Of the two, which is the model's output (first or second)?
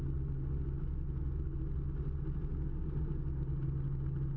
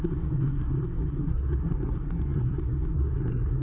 second